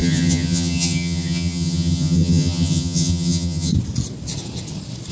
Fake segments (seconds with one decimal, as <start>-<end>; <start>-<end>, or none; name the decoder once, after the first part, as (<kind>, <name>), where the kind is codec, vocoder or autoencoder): 0.0-3.7 (vocoder, HiFi-GAN)